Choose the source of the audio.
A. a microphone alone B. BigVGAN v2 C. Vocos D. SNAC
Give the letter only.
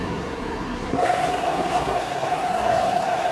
D